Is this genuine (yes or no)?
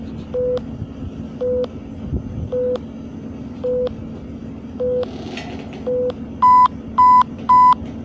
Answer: yes